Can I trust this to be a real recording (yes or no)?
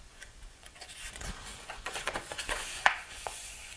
no